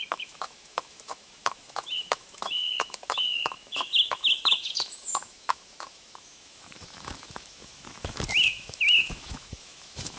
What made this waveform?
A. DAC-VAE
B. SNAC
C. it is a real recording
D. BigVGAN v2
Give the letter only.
A